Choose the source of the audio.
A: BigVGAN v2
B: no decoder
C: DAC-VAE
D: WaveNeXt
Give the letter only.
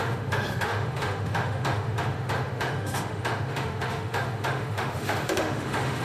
C